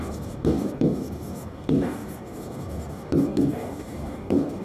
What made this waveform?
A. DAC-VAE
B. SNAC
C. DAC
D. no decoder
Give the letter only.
C